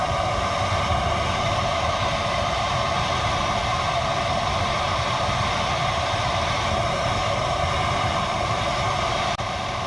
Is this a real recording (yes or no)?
no